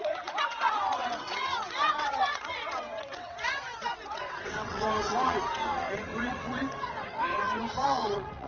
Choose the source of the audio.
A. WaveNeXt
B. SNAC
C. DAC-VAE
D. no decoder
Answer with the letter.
A